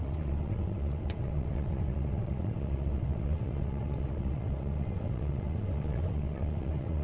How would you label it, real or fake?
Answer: fake